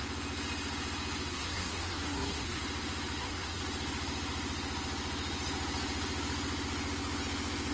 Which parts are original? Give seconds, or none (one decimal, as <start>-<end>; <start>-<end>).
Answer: 0.0-1.3; 2.6-3.2; 3.6-7.7